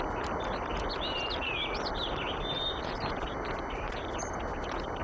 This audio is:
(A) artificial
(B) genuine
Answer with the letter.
A